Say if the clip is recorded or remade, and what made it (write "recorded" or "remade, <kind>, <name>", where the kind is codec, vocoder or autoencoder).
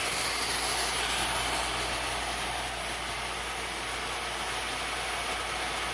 recorded